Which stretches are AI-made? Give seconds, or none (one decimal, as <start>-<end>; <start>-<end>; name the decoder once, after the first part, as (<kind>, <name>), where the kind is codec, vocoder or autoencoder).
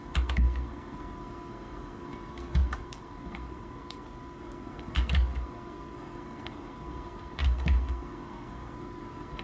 0.0-9.4 (codec, SNAC)